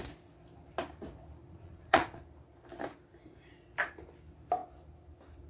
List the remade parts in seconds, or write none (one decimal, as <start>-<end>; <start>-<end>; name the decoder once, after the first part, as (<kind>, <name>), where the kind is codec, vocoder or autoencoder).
1.4-2.2 (vocoder, Vocos)